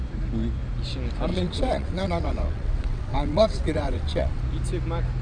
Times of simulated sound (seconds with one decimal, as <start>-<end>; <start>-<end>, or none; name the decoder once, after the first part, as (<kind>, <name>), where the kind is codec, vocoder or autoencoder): 1.3-4.4 (vocoder, WaveNeXt)